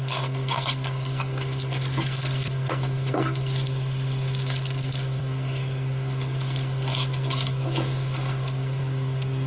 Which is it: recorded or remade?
remade